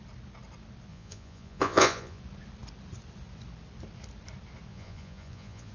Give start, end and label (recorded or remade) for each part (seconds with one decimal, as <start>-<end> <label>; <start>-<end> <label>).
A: 0.0-0.9 recorded; 0.9-2.2 remade; 2.2-4.7 recorded; 4.7-5.7 remade